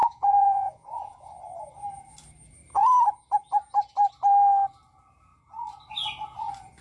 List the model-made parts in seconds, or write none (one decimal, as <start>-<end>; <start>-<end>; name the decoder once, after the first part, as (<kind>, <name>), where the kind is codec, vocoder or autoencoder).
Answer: 0.0-1.3 (vocoder, Vocos)